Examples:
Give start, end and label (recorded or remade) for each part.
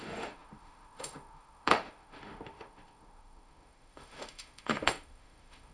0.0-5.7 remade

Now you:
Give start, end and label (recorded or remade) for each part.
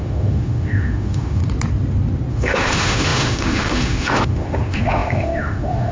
0.0-1.4 remade; 1.4-2.3 recorded; 2.3-5.9 remade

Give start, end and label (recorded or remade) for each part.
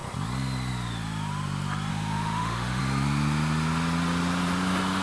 0.0-1.9 recorded; 1.9-2.8 remade; 2.8-5.0 recorded